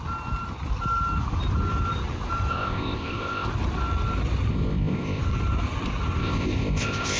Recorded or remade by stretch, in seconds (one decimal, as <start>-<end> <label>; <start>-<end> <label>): 0.0-2.5 recorded; 2.5-3.5 remade; 3.5-4.5 recorded; 4.5-5.2 remade; 5.2-6.2 recorded; 6.2-7.2 remade